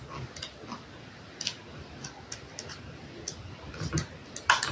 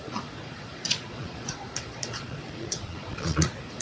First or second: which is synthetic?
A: second